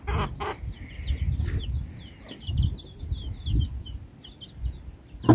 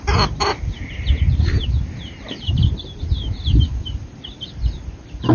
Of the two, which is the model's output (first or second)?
second